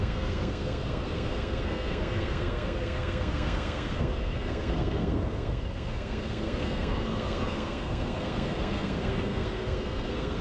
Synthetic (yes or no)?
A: yes